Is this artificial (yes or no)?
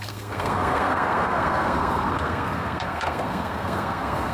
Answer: yes